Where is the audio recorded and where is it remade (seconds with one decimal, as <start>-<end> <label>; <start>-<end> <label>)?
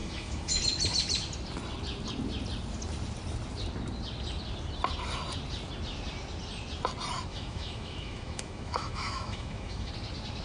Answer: 0.0-0.6 remade; 0.6-7.3 recorded; 7.3-9.9 remade; 9.9-10.4 recorded